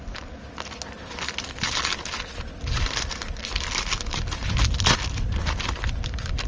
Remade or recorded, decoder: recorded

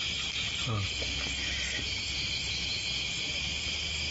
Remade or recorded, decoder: recorded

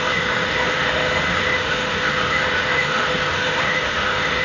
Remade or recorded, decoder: remade, autoencoder, DAC-VAE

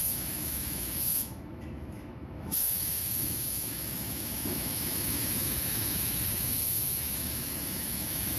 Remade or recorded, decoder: remade, autoencoder, DAC-VAE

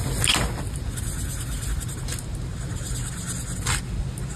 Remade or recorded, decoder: recorded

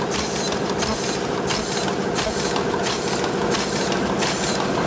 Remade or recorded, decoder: recorded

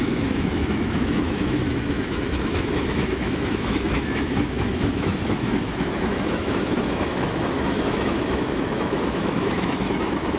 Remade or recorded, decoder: remade, autoencoder, DAC-VAE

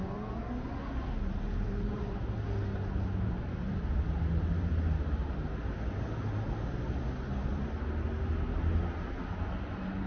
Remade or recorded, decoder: recorded